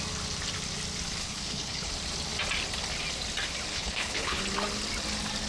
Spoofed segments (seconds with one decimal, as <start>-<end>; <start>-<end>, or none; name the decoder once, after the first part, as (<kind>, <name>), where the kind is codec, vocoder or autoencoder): 1.2-1.9 (codec, HILCodec); 3.7-4.4